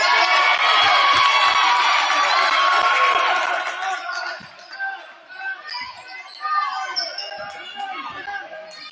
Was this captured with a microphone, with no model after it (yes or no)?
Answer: yes